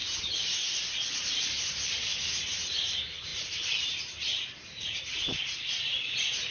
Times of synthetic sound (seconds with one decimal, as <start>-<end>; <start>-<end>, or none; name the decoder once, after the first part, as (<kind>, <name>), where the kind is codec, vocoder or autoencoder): 1.7-2.1 (vocoder, BigVGAN v2); 2.7-6.5